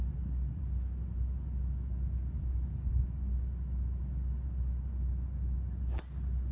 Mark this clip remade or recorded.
recorded